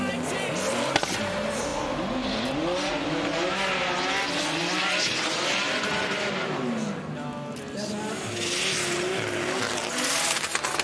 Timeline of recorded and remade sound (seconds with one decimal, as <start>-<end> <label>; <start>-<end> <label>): 0.0-10.8 recorded